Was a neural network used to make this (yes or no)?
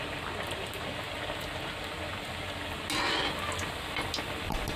no